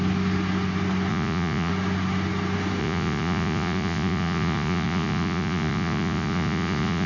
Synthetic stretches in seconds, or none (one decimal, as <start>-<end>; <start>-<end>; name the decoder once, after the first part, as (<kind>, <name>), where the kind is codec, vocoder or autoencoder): 1.1-1.7 (vocoder, Vocos); 2.8-7.1